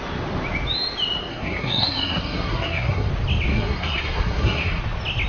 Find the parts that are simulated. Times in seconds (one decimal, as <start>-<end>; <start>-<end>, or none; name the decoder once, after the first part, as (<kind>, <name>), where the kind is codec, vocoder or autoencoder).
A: 1.3-3.1 (codec, SNAC); 3.5-4.8